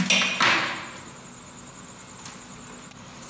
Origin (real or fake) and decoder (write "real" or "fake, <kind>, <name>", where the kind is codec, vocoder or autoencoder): real